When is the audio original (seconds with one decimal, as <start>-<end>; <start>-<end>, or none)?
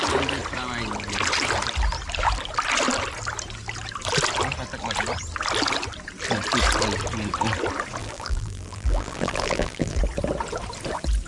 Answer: 0.0-8.0; 10.0-11.3